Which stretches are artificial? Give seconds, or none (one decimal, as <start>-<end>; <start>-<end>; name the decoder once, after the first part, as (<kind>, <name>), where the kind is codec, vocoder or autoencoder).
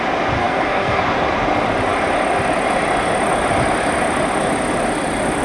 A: 0.4-1.0 (codec, SNAC)